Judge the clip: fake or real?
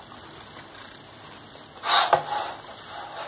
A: real